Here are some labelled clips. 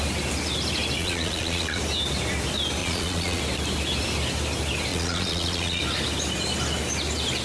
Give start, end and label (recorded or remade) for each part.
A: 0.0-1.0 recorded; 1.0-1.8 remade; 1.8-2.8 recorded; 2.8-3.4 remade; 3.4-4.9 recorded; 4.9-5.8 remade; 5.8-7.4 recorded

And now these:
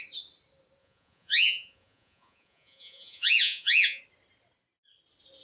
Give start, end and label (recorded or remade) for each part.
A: 0.0-0.8 recorded; 0.8-4.0 remade; 4.0-5.4 recorded

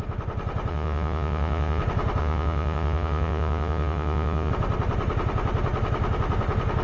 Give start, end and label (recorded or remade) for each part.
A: 0.0-0.7 recorded; 0.7-1.8 remade; 1.8-2.2 recorded; 2.2-4.5 remade; 4.5-6.8 recorded

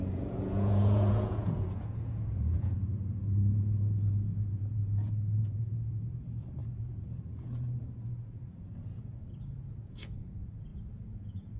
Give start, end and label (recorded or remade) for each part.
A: 0.0-11.6 remade

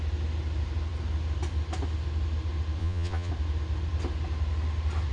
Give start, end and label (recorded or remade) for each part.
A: 0.0-2.8 recorded; 2.8-3.3 remade; 3.3-5.1 recorded